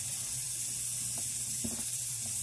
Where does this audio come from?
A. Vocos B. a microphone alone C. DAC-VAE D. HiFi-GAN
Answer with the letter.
B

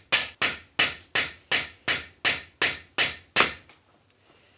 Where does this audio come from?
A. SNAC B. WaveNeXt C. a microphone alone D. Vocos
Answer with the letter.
C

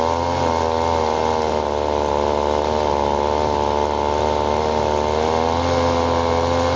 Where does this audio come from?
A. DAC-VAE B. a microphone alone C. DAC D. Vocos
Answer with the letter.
B